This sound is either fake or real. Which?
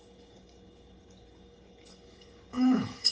fake